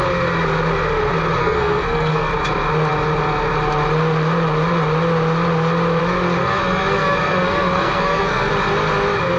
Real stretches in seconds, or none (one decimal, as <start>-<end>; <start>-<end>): 0.0-1.4; 2.3-6.4; 8.5-9.4

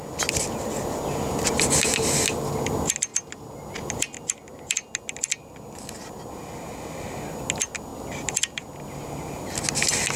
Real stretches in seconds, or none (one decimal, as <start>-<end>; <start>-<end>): 0.0-10.2

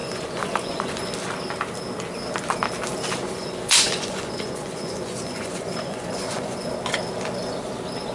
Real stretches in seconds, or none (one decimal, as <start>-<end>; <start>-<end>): 1.1-3.2; 6.7-8.1

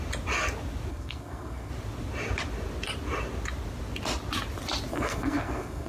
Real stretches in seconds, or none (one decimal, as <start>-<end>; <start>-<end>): 0.0-0.9; 1.7-4.9

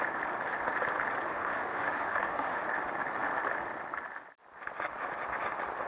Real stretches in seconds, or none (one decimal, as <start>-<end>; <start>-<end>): 0.0-1.3; 2.6-5.9

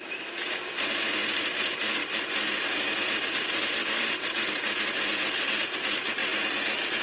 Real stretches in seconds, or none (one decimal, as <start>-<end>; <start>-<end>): 0.0-7.0

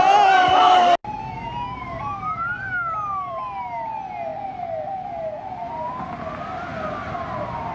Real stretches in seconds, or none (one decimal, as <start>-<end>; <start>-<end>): 0.0-7.7